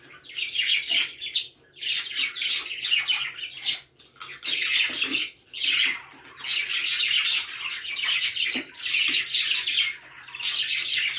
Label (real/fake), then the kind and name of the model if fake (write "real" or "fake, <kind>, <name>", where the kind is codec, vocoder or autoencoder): real